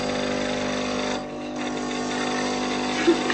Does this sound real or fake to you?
real